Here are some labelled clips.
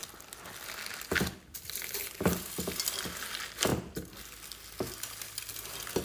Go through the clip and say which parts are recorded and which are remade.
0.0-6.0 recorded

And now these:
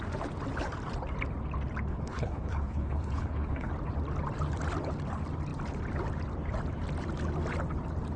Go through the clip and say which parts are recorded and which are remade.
0.0-1.9 recorded; 1.9-3.7 remade; 3.7-8.2 recorded

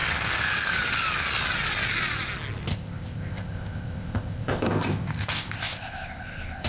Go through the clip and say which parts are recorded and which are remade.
0.0-2.7 recorded; 2.7-6.7 remade

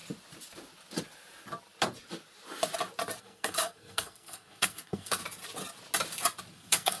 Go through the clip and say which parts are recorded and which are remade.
0.0-3.2 recorded; 3.2-5.2 remade; 5.2-6.5 recorded; 6.5-7.0 remade

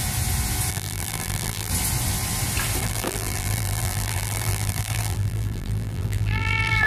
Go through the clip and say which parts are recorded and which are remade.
0.0-0.7 recorded; 0.7-1.7 remade; 1.7-2.8 recorded; 2.8-6.9 remade

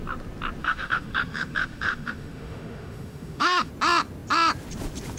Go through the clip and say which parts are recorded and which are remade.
0.0-0.6 recorded; 0.6-3.7 remade; 3.7-5.2 recorded

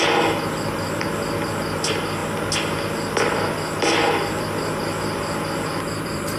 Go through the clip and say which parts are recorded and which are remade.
0.0-6.4 recorded